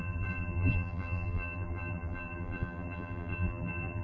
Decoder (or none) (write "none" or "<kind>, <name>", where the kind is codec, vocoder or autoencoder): vocoder, BigVGAN v2